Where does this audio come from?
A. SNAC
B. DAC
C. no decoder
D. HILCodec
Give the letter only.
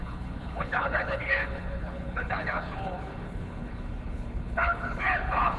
D